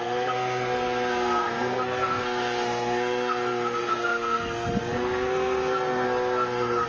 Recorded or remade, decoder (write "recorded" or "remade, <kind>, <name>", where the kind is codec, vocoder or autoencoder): remade, codec, SNAC